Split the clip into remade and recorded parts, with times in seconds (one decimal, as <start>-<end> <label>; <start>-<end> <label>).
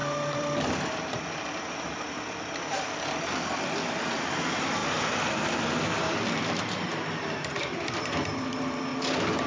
0.0-4.8 remade; 4.8-5.3 recorded; 5.3-6.9 remade; 6.9-7.6 recorded; 7.6-8.9 remade; 8.9-9.5 recorded